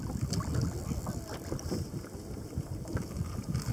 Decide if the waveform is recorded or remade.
recorded